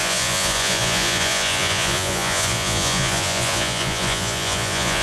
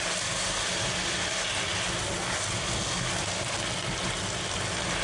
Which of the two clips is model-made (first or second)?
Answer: first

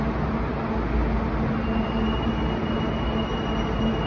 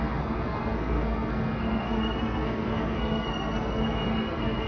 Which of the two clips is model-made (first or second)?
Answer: second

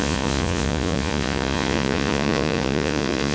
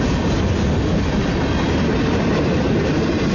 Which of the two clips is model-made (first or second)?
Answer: first